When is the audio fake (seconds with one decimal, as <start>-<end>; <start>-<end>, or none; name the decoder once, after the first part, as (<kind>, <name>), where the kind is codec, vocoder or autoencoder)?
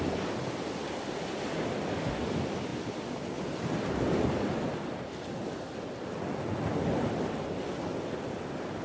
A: none